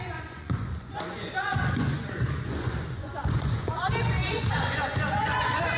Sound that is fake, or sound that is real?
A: fake